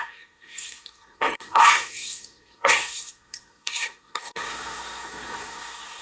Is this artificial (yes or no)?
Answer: yes